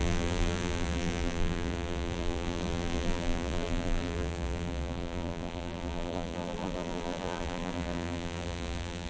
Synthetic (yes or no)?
yes